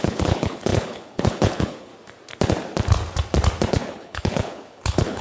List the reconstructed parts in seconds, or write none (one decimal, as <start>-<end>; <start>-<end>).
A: 0.0-1.9; 3.7-5.2